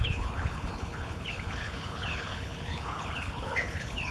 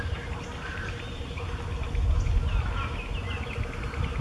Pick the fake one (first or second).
first